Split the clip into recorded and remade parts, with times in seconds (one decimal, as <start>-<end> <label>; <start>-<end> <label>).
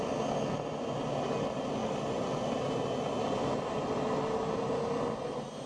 0.0-5.7 recorded